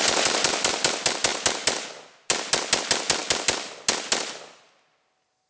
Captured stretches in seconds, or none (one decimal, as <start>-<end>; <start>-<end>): 0.0-5.5